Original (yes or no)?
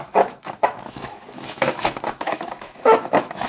no